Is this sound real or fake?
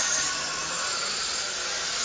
real